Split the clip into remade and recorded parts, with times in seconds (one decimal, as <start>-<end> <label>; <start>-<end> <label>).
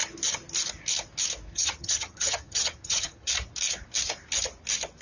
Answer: 0.0-1.5 recorded; 1.5-3.3 remade; 3.3-5.0 recorded